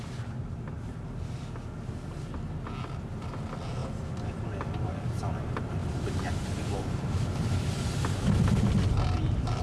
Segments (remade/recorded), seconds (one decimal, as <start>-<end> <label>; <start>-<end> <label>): 0.0-9.6 recorded